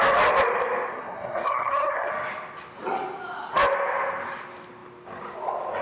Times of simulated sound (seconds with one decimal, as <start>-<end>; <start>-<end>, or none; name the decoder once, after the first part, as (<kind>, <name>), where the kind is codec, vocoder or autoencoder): 0.9-2.1 (codec, SNAC)